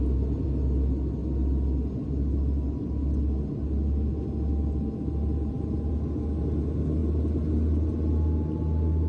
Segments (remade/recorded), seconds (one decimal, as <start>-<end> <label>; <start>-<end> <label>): 0.0-9.1 recorded